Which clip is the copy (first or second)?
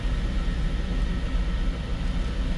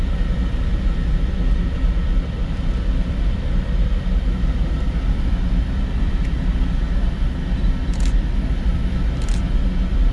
second